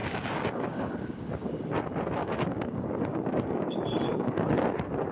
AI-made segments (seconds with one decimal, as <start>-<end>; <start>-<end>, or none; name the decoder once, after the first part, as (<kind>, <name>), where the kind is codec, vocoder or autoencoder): 0.0-1.6 (codec, DAC); 2.2-4.5